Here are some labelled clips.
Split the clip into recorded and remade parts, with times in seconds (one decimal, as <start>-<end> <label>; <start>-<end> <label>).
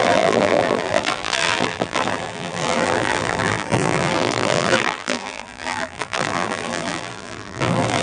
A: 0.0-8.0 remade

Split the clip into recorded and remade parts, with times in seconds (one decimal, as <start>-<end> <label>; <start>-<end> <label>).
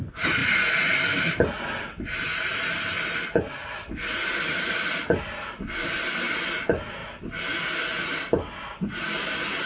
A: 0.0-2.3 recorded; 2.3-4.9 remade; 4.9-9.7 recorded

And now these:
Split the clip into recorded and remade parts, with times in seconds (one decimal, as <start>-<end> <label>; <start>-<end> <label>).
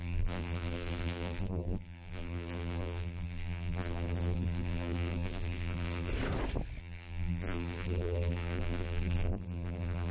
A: 0.0-6.1 remade; 6.1-6.8 recorded; 6.8-10.1 remade